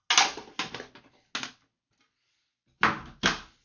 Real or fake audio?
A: real